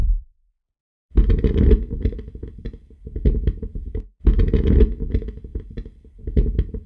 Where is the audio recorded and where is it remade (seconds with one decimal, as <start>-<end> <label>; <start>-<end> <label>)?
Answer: 0.0-0.5 remade; 0.5-0.9 recorded; 0.9-2.8 remade; 2.8-5.5 recorded; 5.5-6.2 remade; 6.2-6.9 recorded